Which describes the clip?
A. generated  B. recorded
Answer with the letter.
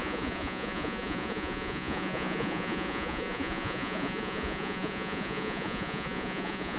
A